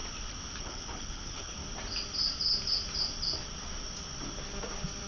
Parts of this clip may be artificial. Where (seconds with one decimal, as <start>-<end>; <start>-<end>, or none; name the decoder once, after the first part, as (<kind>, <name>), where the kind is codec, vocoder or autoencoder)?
0.6-1.6 (codec, HILCodec)